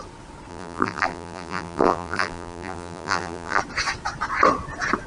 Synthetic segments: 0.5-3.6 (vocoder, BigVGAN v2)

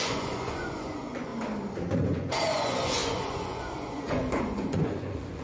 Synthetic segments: 0.0-1.3 (vocoder, Vocos); 1.9-5.4

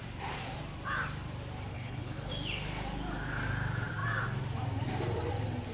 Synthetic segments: 1.7-2.3 (codec, HILCodec)